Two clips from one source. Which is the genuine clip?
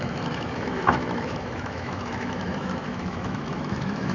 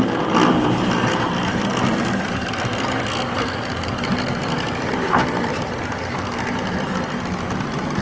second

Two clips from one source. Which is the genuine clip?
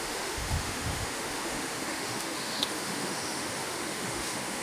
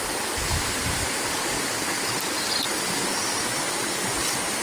second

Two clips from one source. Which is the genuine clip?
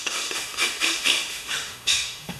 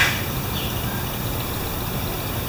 second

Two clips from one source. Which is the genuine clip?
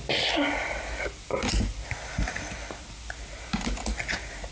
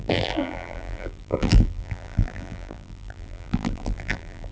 first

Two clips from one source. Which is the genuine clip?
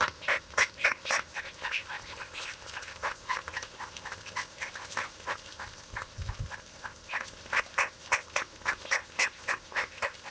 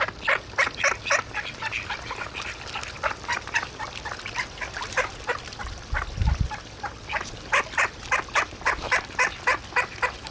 second